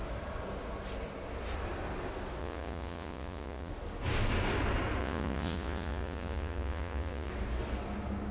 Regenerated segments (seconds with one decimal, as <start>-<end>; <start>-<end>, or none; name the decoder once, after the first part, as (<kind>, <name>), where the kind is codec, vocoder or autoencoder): 2.4-3.7 (vocoder, Vocos); 5.0-7.3